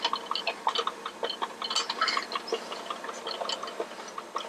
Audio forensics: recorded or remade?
recorded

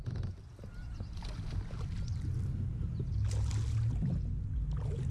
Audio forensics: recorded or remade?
recorded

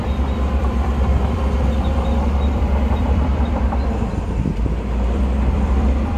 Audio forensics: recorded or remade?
remade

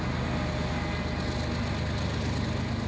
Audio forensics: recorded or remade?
recorded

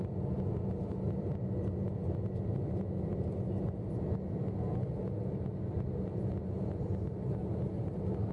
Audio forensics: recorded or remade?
recorded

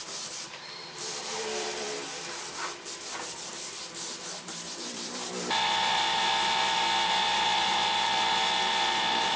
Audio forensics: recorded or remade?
remade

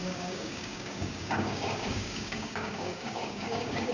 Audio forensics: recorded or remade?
remade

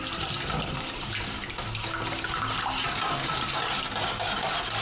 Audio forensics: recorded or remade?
recorded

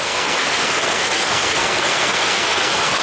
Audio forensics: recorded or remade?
remade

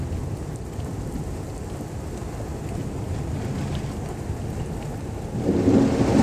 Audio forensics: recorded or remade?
recorded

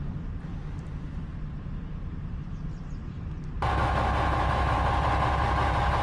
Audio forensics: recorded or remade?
recorded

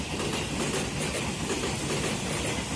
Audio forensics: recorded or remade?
recorded